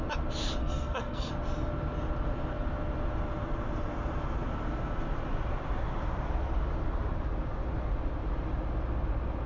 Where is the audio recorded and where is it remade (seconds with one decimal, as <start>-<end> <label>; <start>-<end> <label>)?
0.0-0.6 recorded; 0.6-1.3 remade; 1.3-9.5 recorded